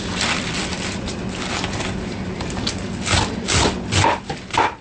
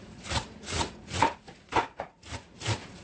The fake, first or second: second